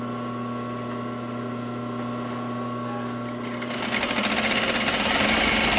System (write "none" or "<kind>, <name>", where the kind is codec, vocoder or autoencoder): none